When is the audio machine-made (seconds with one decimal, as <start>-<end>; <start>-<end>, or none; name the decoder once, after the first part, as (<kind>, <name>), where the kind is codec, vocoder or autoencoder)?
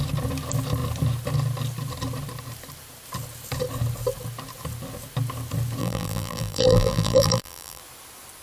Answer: 5.8-7.8 (vocoder, BigVGAN v2)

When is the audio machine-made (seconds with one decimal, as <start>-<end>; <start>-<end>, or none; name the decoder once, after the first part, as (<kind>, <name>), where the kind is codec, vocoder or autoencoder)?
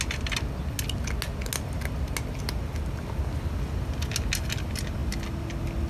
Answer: none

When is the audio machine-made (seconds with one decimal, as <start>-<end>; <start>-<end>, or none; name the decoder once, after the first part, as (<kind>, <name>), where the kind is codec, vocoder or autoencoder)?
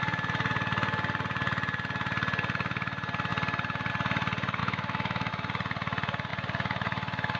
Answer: 4.6-5.3 (autoencoder, DAC-VAE)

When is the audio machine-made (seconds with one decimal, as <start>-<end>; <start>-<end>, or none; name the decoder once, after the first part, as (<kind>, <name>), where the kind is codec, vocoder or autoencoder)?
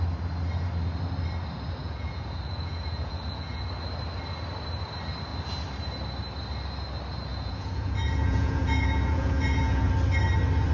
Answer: 1.8-3.7 (vocoder, Vocos); 7.3-9.9